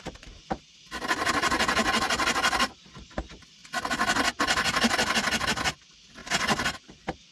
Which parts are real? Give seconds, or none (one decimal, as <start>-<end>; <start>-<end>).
0.0-7.3